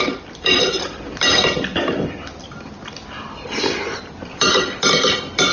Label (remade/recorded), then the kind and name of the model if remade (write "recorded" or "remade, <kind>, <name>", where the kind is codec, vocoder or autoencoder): remade, vocoder, BigVGAN v2